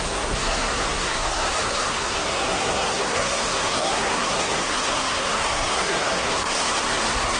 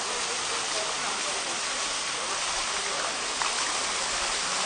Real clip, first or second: second